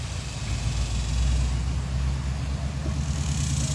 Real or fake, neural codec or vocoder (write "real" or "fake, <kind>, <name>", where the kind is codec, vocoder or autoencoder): real